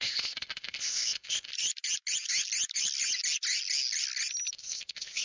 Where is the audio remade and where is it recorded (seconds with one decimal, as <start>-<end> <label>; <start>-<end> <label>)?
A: 0.0-1.5 remade; 1.5-4.5 recorded; 4.5-5.2 remade